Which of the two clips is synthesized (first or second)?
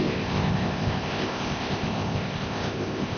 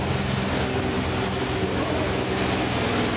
first